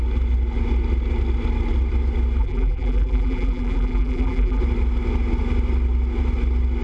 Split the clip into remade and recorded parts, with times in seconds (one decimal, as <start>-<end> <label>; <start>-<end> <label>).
0.0-2.4 recorded; 2.4-4.6 remade; 4.6-6.8 recorded